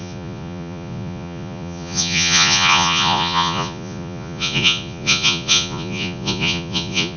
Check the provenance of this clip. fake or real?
fake